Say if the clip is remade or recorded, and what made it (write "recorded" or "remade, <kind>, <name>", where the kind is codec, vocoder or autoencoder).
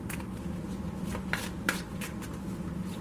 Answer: recorded